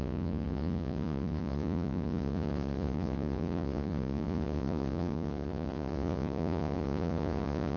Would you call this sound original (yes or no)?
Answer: no